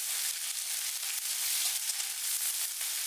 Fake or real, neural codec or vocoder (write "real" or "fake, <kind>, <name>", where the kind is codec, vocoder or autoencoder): real